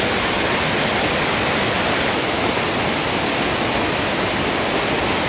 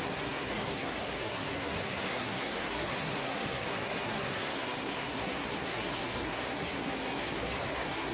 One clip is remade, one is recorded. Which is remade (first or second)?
second